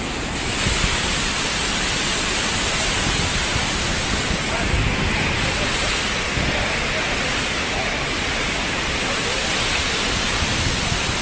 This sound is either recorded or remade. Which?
recorded